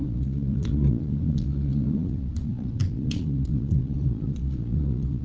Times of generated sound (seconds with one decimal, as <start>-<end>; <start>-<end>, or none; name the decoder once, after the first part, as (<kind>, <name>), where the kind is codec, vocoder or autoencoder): 0.0-5.2 (vocoder, Vocos)